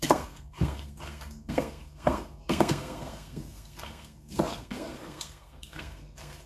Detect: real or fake fake